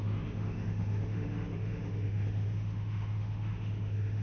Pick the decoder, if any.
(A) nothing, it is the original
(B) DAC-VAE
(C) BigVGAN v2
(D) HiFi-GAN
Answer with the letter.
B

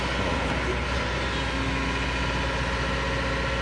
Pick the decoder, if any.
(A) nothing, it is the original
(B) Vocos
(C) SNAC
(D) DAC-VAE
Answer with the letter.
A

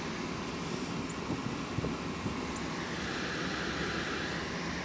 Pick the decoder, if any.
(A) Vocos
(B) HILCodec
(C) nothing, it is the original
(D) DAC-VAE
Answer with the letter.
C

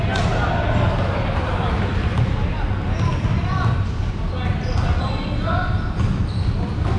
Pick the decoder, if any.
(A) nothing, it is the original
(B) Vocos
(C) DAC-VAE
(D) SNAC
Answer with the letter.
A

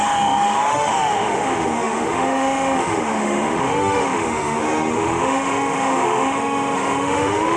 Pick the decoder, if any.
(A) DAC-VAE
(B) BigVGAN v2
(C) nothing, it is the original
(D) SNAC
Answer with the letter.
A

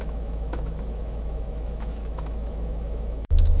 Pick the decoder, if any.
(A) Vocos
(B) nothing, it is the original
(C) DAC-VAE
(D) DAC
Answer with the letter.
C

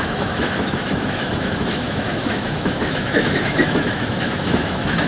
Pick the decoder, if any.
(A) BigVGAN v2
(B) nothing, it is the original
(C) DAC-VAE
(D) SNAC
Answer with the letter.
C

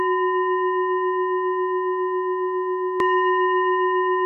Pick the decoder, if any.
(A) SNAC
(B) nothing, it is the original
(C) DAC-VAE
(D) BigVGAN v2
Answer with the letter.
B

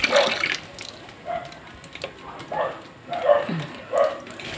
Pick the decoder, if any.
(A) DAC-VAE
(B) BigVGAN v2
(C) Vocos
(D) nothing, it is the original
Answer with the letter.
D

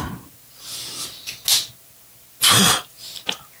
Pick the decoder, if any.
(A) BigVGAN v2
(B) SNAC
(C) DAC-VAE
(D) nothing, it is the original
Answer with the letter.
D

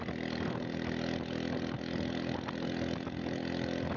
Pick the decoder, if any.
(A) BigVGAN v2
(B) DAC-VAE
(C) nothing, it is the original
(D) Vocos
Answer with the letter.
C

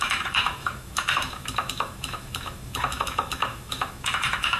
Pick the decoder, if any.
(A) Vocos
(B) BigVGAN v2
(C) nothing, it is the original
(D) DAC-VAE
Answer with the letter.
D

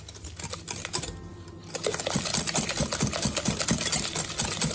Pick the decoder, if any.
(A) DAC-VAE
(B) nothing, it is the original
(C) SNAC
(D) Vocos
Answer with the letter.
B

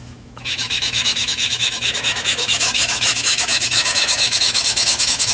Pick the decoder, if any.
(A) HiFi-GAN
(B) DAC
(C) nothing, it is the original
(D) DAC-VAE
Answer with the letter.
D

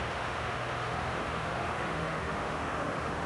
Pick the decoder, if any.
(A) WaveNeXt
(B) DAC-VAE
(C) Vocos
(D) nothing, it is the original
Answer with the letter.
B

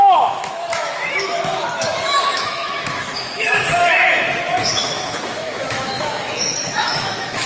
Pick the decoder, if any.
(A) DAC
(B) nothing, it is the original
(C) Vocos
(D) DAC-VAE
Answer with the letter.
D